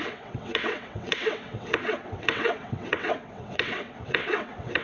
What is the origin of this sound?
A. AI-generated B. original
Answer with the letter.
A